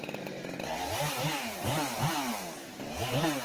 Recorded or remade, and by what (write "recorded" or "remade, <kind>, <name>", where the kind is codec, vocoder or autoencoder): recorded